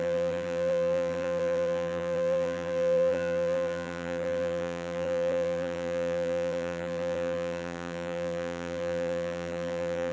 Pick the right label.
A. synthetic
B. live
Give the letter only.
A